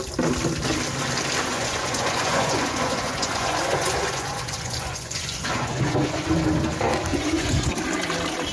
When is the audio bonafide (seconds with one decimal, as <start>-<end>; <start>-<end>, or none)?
0.0-1.5; 6.3-7.1; 7.7-8.5